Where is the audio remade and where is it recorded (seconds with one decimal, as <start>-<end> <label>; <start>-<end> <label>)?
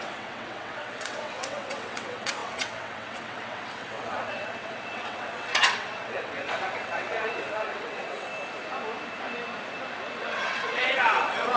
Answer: 0.0-8.3 remade; 8.3-10.2 recorded; 10.2-11.6 remade